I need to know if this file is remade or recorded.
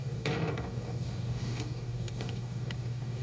remade